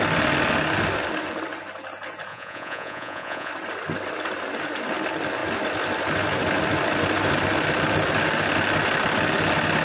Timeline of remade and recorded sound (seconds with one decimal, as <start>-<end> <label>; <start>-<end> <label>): 0.0-2.3 recorded; 2.3-3.5 remade; 3.5-9.8 recorded